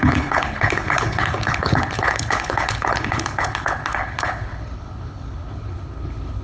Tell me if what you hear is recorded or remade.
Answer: remade